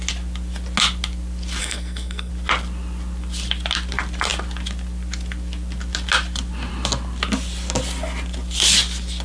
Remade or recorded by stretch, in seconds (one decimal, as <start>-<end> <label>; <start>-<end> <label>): 0.0-1.6 recorded; 1.6-2.3 remade; 2.3-9.2 recorded